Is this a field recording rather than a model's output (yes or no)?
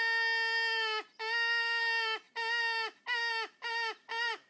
yes